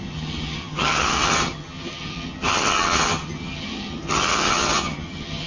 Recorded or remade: remade